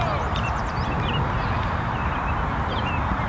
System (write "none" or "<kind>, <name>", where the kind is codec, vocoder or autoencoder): none